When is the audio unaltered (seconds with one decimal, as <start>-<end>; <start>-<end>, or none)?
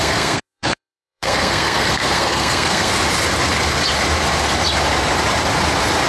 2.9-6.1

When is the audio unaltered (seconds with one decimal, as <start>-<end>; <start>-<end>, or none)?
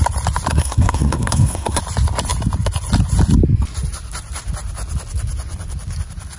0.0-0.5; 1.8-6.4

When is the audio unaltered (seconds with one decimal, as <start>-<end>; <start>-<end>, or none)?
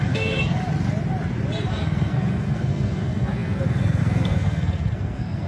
0.6-1.7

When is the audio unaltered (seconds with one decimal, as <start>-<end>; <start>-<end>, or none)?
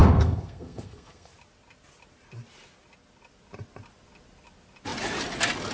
1.3-5.7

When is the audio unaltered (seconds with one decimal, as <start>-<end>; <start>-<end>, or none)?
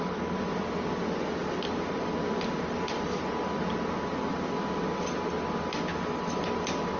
0.0-7.0